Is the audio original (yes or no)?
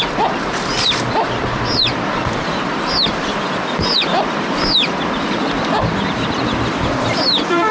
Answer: no